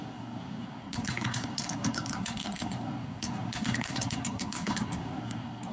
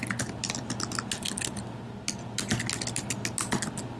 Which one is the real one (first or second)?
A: second